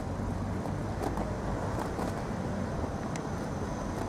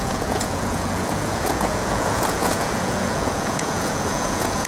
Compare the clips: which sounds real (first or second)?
first